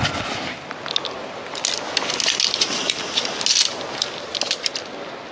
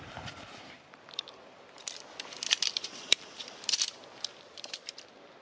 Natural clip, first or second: first